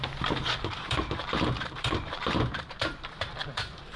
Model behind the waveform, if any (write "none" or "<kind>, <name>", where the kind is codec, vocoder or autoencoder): vocoder, BigVGAN v2